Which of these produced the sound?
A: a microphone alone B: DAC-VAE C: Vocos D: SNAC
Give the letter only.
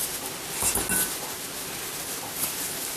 A